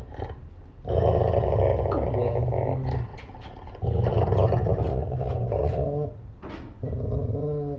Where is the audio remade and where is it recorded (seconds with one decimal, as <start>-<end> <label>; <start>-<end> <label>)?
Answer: 0.0-4.9 recorded; 4.9-6.3 remade; 6.3-7.8 recorded